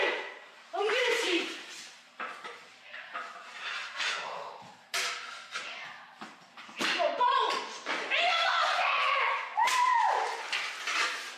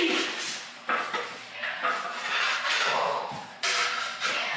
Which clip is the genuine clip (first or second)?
second